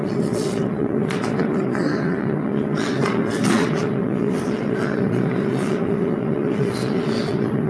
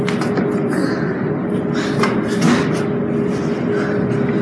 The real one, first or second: second